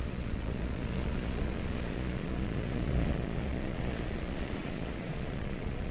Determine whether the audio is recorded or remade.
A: remade